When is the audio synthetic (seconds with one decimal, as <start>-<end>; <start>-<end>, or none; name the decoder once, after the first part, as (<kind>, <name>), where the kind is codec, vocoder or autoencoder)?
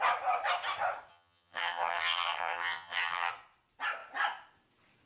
1.1-3.3 (vocoder, HiFi-GAN)